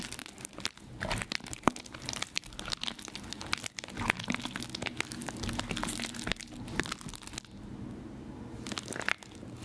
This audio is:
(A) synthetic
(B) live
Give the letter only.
B